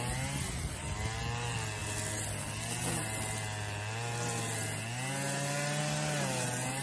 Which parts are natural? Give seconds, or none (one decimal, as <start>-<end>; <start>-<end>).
0.0-6.8